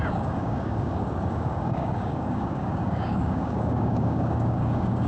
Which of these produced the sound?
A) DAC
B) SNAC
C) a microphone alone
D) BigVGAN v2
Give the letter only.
A